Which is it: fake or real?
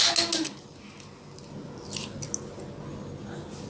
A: real